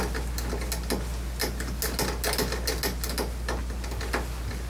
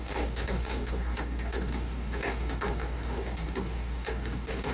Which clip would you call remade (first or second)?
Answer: second